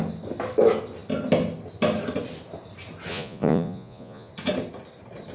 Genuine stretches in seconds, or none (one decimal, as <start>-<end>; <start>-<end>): 0.0-3.1; 4.3-5.3